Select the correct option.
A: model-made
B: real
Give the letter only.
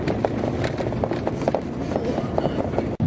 B